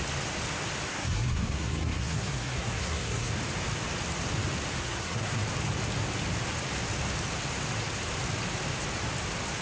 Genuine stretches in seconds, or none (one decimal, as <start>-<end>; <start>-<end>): 0.0-0.9; 3.3-4.8; 5.4-9.6